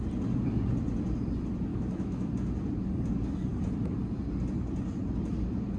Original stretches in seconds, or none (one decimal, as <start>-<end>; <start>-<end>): 0.0-1.7; 2.3-5.8